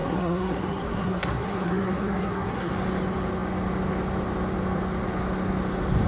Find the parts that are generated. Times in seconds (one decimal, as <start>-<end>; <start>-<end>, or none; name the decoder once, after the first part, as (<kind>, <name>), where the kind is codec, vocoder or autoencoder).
0.0-2.7 (codec, SNAC)